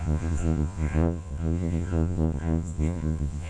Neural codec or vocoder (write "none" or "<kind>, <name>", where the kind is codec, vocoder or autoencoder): vocoder, Vocos